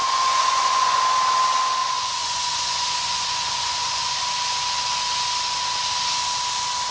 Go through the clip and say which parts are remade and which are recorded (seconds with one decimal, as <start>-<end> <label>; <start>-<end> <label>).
0.0-1.0 remade; 1.0-1.8 recorded; 1.8-4.2 remade; 4.2-6.9 recorded